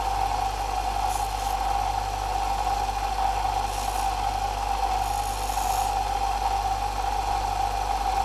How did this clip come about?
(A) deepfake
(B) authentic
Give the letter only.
B